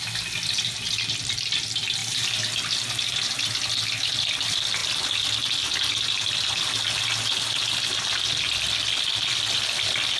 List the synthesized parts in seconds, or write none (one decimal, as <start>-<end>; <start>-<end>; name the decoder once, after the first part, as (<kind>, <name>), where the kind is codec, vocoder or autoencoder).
none

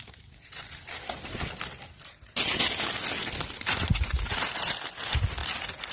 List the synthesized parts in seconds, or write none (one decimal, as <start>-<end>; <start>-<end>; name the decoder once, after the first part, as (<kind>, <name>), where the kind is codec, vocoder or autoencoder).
none

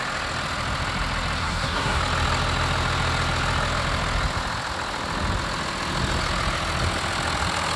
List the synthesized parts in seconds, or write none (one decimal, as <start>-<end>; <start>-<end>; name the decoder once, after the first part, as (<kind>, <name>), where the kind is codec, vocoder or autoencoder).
1.4-2.0 (codec, SNAC)

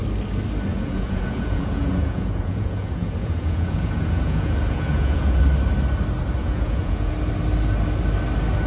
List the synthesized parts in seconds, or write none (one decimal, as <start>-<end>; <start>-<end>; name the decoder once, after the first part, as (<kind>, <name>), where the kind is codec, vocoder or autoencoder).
0.7-5.4 (vocoder, Vocos); 6.4-7.1

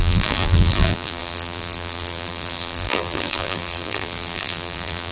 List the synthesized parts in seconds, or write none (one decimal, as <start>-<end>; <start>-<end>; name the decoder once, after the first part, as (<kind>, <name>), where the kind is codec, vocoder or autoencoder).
0.0-5.1 (vocoder, BigVGAN v2)

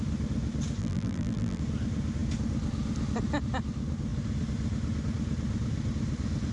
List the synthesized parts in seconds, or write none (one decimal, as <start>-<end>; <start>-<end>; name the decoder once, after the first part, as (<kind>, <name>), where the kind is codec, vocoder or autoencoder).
0.8-1.6 (vocoder, BigVGAN v2)